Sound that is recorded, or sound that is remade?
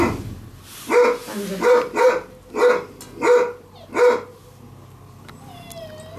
recorded